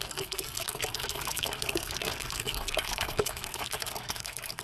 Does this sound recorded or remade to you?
remade